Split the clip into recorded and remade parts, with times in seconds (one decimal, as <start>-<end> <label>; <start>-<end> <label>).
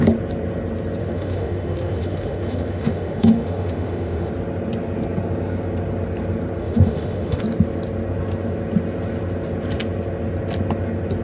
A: 0.0-1.0 recorded; 1.0-4.3 remade; 4.3-6.6 recorded; 6.6-7.4 remade; 7.4-11.2 recorded